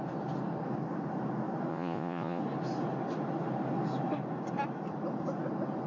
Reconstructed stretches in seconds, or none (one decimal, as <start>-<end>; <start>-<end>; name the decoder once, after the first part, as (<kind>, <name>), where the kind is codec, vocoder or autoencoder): 1.7-2.4 (vocoder, Vocos)

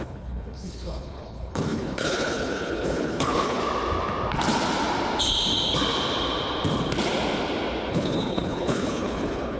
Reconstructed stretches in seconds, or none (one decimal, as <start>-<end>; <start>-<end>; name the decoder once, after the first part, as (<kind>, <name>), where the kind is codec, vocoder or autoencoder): 0.0-3.6 (codec, HILCodec); 7.9-9.6

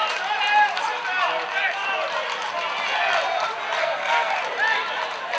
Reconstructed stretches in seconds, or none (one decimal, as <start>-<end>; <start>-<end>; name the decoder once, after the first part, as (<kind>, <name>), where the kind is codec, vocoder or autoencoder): 3.8-4.3 (codec, SNAC)

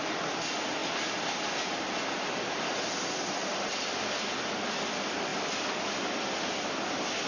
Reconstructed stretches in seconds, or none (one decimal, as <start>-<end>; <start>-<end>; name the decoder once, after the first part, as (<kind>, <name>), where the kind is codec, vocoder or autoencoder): none

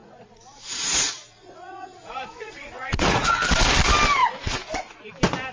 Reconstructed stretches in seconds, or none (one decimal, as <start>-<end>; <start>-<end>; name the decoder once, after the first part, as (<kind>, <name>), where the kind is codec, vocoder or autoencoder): 0.0-3.3 (vocoder, Vocos); 4.2-5.1